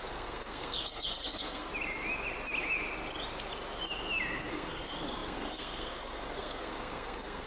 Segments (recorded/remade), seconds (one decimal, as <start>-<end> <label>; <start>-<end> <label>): 0.0-1.7 remade; 1.7-4.5 recorded; 4.5-7.5 remade